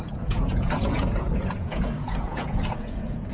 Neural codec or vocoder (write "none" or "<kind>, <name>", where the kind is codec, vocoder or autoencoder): vocoder, Vocos